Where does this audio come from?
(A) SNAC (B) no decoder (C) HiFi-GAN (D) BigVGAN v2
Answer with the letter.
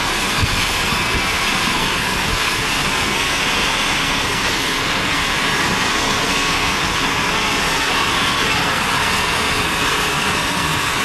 A